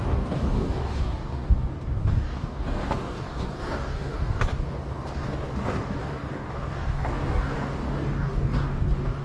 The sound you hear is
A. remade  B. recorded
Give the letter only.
A